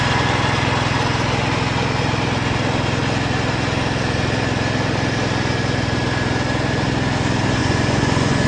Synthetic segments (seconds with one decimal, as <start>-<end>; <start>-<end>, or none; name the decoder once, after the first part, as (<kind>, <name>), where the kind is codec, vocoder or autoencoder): 7.6-8.5 (vocoder, Vocos)